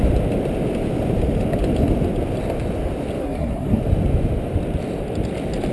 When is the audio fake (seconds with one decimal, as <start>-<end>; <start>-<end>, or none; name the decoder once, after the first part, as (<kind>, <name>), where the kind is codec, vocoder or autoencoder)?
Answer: 3.2-3.8 (codec, SNAC)